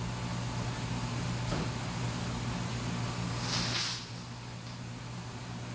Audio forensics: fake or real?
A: real